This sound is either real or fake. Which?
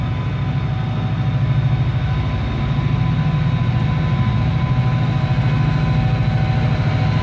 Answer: real